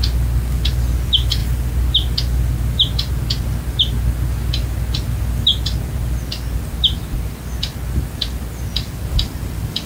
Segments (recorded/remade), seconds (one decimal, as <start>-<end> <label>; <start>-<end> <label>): 0.0-9.9 recorded